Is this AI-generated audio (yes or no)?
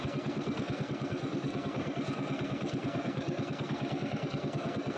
yes